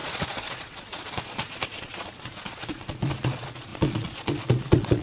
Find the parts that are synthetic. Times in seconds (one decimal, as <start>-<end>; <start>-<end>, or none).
0.0-5.0